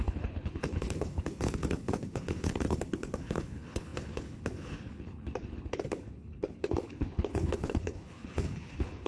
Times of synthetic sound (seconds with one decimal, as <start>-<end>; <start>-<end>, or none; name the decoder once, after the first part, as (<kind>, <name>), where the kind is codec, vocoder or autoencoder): 0.0-9.1 (codec, HILCodec)